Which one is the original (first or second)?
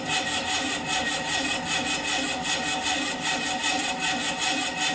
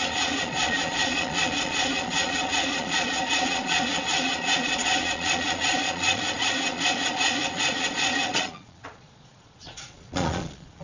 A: first